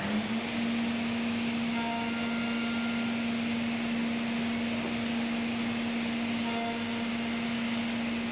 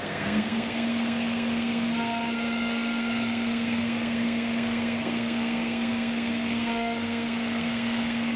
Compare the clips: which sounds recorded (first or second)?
first